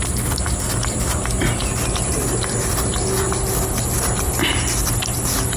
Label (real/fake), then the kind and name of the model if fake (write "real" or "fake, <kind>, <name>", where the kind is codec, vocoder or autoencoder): real